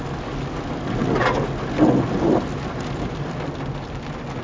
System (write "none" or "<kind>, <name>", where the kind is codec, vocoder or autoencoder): none